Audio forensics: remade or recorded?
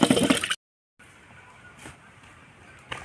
recorded